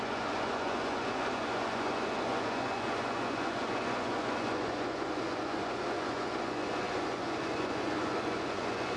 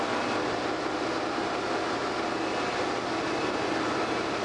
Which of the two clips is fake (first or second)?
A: first